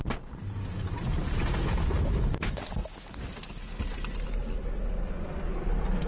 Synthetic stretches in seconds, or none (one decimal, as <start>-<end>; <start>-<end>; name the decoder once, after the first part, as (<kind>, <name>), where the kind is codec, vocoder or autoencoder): none